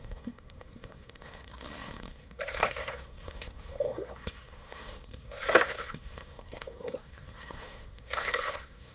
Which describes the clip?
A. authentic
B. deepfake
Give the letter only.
B